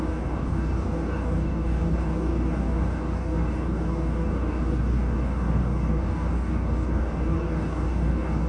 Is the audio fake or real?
fake